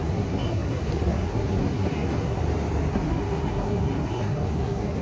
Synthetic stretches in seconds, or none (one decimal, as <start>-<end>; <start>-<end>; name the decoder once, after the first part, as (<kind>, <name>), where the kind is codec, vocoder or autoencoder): 0.0-2.4 (codec, SNAC); 2.9-5.0